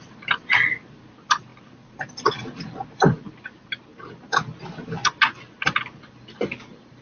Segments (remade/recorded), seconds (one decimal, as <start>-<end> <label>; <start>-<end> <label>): 0.0-7.0 recorded

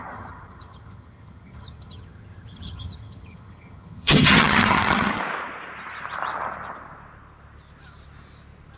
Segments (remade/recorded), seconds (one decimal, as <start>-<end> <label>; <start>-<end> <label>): 0.0-5.2 remade; 5.2-8.8 recorded

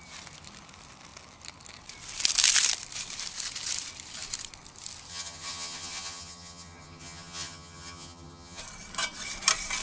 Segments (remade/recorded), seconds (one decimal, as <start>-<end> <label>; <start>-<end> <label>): 0.0-5.1 recorded; 5.1-8.6 remade; 8.6-9.8 recorded

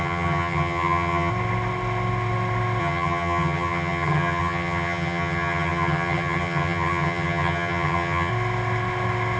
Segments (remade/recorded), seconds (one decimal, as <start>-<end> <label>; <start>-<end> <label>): 0.0-1.3 remade; 1.3-2.8 recorded; 2.8-8.3 remade; 8.3-9.4 recorded